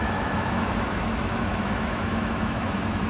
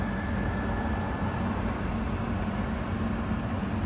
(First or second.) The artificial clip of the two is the first